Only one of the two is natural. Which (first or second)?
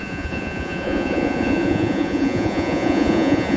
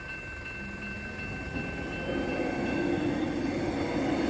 second